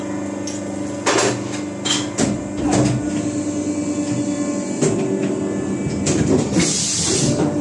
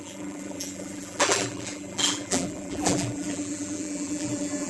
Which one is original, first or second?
first